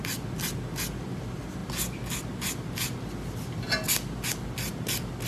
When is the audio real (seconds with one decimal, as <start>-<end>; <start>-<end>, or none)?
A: 0.0-5.3